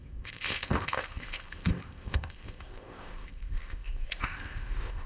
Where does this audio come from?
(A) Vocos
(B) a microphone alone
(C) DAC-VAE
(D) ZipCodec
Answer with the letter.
D